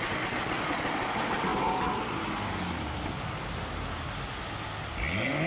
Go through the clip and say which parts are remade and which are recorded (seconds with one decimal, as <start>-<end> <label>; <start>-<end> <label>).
0.0-5.5 recorded